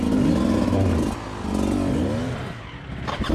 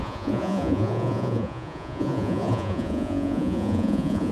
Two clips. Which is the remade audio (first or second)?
second